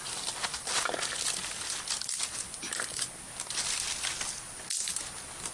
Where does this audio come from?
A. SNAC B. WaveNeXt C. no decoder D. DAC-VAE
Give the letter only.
C